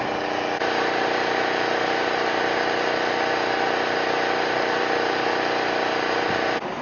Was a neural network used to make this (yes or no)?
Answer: no